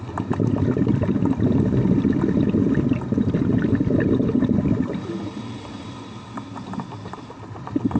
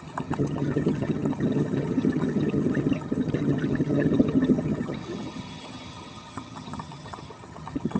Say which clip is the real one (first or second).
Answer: first